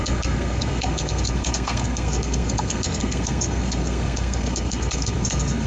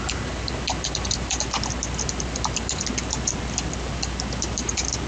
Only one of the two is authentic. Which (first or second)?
second